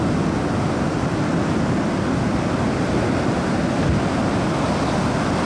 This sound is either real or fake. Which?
real